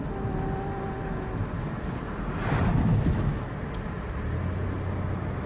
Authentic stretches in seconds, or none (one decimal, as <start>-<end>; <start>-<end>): 0.0-2.9; 3.6-5.5

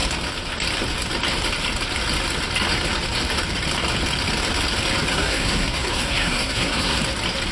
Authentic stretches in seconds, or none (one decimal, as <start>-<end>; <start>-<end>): 0.0-5.1; 7.0-7.5

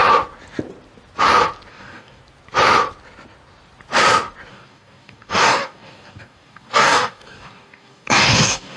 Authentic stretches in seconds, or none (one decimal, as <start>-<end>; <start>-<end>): 0.0-1.7; 2.2-4.5

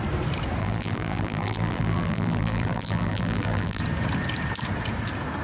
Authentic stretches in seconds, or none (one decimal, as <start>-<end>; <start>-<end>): 0.0-0.6; 3.8-5.4

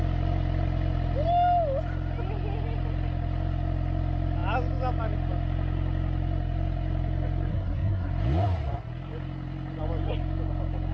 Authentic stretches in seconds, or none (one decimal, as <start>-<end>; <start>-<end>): 0.0-7.5; 8.1-10.9

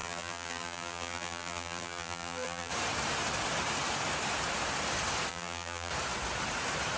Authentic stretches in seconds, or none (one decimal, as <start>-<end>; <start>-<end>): 2.7-5.3; 5.9-7.0

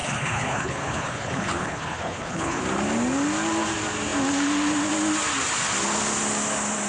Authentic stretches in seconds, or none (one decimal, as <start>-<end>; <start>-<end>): 2.6-6.9

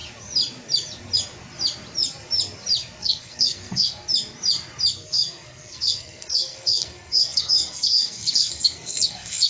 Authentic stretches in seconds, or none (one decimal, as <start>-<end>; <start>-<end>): 0.0-3.0; 4.0-4.9